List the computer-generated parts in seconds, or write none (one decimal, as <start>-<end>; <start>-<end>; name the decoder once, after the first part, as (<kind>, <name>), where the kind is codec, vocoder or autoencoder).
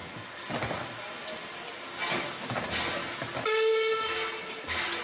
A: none